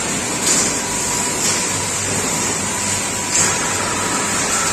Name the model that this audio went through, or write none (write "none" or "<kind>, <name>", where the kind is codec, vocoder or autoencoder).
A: none